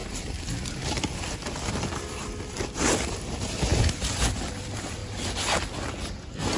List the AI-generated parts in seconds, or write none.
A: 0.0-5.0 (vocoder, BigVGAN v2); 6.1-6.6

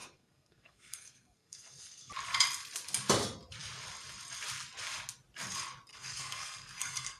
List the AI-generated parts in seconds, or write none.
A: 0.0-2.1 (codec, SNAC); 5.9-7.2

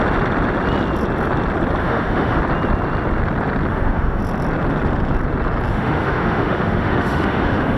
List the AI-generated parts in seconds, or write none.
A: 1.8-2.4 (autoencoder, DAC-VAE); 3.7-4.2; 5.7-7.8

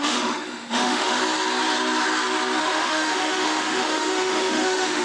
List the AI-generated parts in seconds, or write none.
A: 0.0-1.2 (autoencoder, DAC-VAE); 2.6-5.0

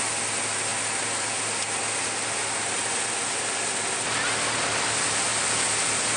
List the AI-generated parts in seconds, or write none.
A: none